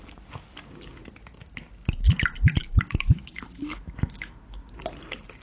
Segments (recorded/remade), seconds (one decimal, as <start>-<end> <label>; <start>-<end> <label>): 0.0-2.6 recorded; 2.6-4.8 remade; 4.8-5.4 recorded